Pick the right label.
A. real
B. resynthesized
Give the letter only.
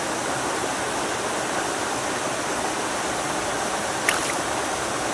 A